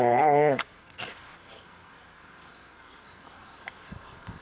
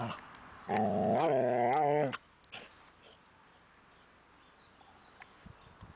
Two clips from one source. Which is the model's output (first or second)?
first